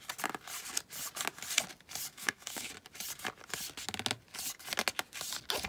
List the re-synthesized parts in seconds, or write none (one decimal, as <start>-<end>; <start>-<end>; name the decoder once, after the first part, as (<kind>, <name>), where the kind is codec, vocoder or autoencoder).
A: 2.1-2.7 (codec, SNAC)